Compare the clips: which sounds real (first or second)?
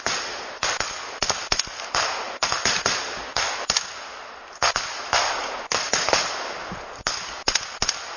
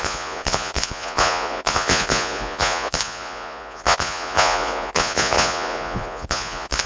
first